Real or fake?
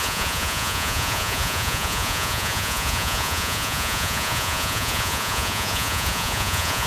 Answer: fake